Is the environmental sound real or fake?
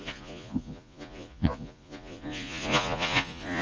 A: fake